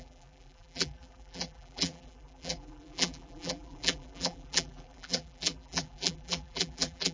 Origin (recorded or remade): remade